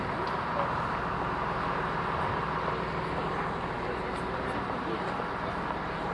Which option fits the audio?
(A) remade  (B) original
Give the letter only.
B